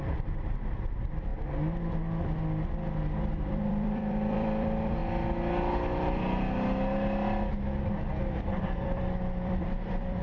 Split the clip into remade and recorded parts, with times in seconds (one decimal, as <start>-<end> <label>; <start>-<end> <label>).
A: 0.0-1.3 remade; 1.3-3.3 recorded; 3.3-5.0 remade; 5.0-8.2 recorded; 8.2-10.2 remade